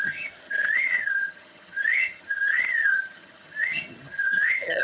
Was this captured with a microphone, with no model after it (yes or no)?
no